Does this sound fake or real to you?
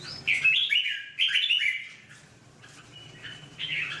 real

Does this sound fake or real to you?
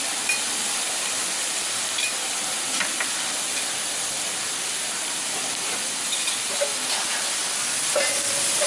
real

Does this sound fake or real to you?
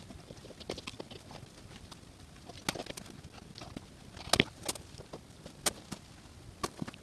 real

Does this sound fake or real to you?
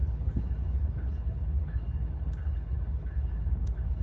fake